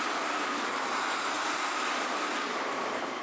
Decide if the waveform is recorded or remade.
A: recorded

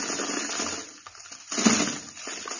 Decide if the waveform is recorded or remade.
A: recorded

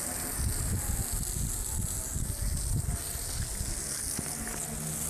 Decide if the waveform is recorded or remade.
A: recorded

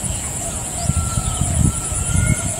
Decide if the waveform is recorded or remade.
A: remade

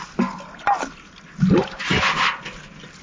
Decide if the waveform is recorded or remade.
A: recorded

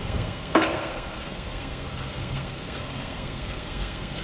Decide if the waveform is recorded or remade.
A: remade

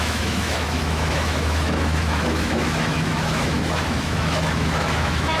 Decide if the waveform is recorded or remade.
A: remade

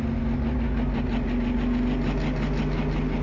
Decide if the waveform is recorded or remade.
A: recorded